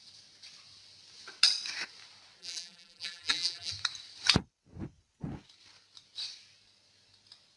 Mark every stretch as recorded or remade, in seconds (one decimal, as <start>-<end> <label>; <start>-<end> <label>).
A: 0.0-2.4 recorded; 2.4-3.7 remade; 3.7-7.6 recorded